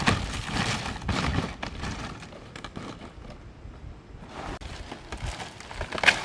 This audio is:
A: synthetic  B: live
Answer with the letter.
B